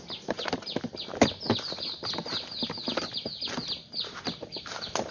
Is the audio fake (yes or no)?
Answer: no